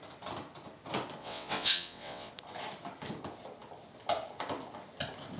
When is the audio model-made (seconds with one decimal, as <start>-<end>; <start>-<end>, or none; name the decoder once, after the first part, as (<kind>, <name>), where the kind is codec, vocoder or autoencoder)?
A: 1.2-2.3 (vocoder, WaveNeXt)